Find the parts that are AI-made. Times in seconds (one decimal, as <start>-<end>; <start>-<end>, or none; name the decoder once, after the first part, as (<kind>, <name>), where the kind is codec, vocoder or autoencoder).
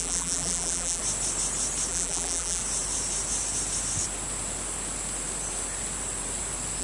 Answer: 0.0-1.0 (vocoder, BigVGAN v2); 1.9-2.6